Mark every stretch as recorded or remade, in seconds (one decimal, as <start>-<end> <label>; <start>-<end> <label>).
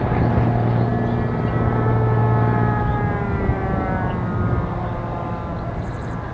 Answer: 0.0-6.3 recorded